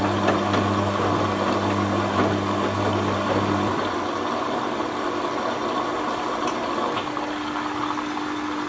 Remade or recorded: recorded